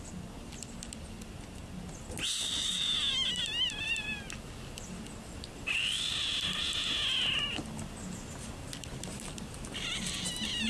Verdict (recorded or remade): recorded